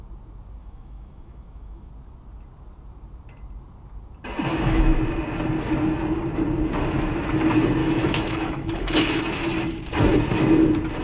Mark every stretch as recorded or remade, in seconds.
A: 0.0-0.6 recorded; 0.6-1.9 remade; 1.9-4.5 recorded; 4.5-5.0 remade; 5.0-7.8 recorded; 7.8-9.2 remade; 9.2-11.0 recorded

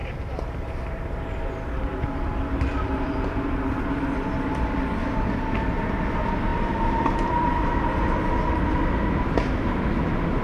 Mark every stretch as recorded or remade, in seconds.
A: 0.0-1.9 recorded; 1.9-4.8 remade; 4.8-6.5 recorded; 6.5-8.0 remade; 8.0-10.4 recorded

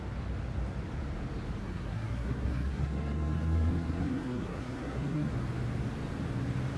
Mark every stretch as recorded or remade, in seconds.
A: 0.0-1.6 recorded; 1.6-5.3 remade; 5.3-6.8 recorded

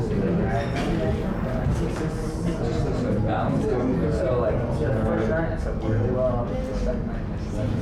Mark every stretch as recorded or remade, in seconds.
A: 0.0-7.8 recorded